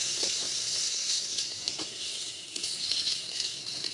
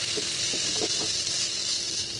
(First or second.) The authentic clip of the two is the second